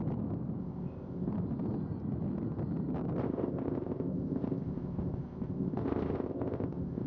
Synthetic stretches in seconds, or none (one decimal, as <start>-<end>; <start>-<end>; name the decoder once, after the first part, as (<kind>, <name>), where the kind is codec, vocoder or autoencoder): 0.6-1.3 (codec, ZipCodec); 3.2-7.1